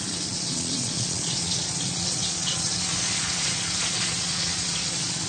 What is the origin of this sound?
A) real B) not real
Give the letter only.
B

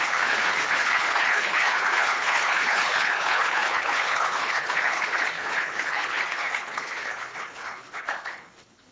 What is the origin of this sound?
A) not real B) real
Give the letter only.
A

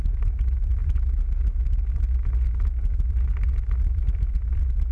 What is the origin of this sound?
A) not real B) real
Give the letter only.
B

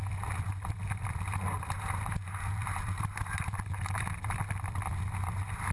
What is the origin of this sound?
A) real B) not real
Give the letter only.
A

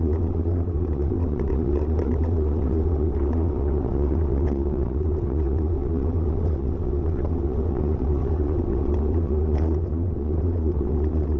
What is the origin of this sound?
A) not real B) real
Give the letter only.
A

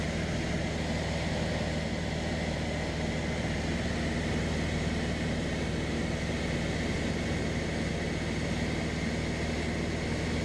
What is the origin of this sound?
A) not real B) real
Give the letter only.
B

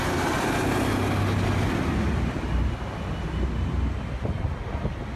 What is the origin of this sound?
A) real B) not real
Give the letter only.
A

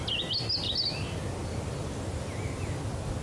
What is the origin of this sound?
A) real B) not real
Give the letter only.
A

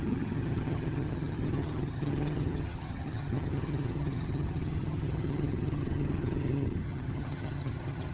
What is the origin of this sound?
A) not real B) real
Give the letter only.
A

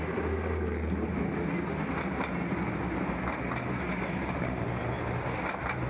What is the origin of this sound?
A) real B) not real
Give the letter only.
A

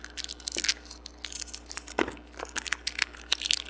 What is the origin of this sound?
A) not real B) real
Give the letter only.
B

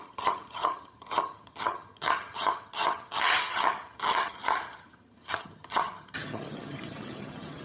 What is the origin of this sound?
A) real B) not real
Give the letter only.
B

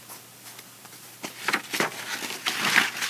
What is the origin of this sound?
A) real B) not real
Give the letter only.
A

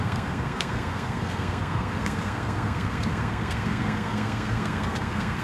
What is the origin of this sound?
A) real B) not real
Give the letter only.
B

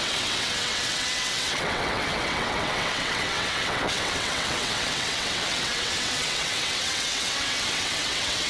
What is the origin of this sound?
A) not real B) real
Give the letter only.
A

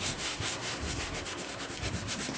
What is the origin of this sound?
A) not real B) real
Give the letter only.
A